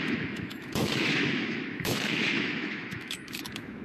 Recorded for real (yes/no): no